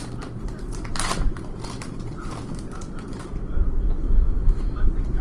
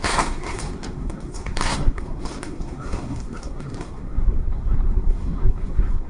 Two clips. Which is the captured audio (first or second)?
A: first